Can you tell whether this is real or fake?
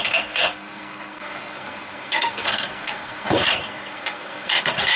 fake